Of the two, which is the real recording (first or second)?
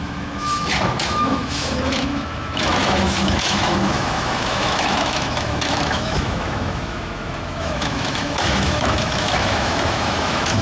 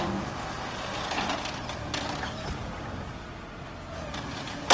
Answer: second